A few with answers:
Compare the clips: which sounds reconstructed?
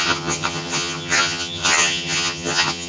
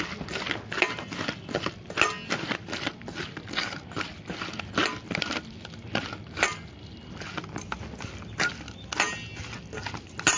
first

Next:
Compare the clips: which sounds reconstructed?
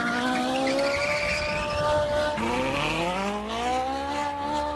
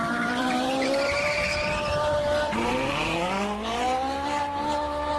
second